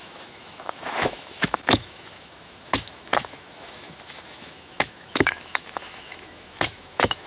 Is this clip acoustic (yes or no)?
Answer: no